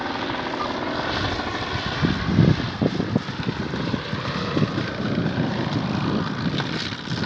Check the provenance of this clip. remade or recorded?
recorded